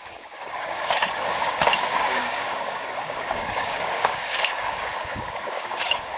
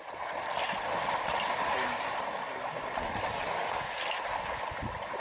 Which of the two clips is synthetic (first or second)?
first